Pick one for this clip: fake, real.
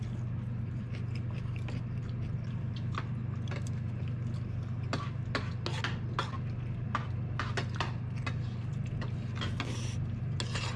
real